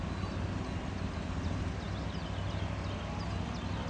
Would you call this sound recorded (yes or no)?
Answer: yes